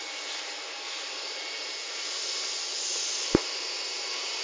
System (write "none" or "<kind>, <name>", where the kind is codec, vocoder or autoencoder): vocoder, BigVGAN v2